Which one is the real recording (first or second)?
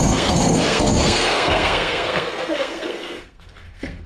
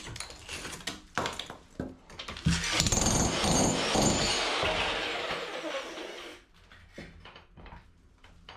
second